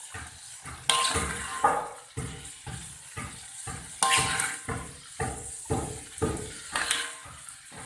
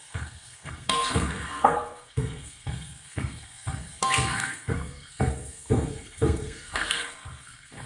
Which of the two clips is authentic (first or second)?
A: first